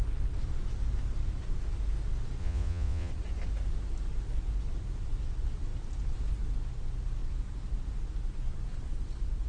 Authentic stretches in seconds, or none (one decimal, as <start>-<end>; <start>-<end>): 0.0-2.4; 3.1-9.5